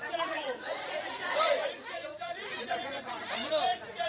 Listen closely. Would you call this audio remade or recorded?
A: remade